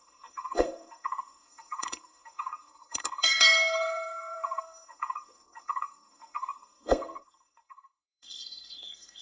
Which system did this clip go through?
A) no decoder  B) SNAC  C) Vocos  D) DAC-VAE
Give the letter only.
B